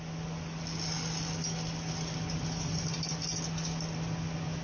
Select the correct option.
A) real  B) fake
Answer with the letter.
A